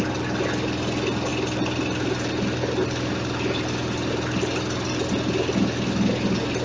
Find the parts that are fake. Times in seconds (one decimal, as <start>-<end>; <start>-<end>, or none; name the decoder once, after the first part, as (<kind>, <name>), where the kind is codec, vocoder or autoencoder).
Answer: none

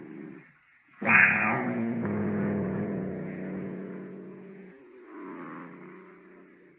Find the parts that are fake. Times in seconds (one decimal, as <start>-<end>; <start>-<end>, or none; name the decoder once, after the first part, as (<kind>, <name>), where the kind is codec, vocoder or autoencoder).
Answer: 0.7-4.8 (vocoder, Vocos)

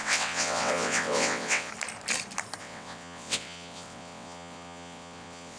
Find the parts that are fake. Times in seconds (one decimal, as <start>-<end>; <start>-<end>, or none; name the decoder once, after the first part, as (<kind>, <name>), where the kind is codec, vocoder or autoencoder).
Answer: 0.0-1.7 (vocoder, WaveNeXt); 2.6-5.6

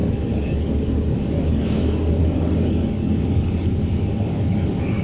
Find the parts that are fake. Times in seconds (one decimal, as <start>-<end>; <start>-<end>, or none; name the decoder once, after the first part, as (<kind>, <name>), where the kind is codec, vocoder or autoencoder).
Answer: 0.0-5.0 (codec, DAC)

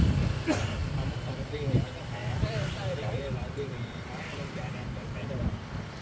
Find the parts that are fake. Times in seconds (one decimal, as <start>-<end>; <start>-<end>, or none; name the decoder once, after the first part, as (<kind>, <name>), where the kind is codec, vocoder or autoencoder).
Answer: 0.8-1.4 (vocoder, BigVGAN v2); 2.2-6.0

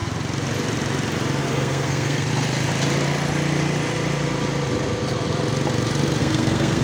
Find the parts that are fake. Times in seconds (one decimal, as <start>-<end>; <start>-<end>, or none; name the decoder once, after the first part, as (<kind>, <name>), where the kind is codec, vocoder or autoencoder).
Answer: 1.4-2.3 (codec, SNAC); 6.2-6.8